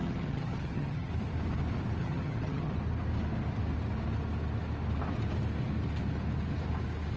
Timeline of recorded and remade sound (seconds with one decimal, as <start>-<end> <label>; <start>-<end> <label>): 0.0-1.1 remade; 1.1-2.0 recorded; 2.0-2.7 remade; 2.7-7.2 recorded